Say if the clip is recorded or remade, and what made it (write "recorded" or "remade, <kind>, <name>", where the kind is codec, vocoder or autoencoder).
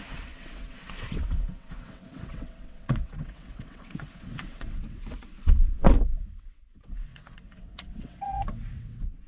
remade, vocoder, WaveNeXt